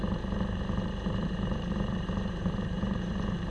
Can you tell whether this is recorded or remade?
remade